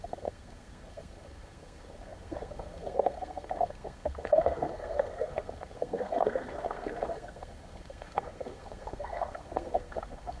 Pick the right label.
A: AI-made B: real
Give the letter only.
A